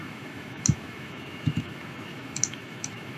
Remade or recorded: remade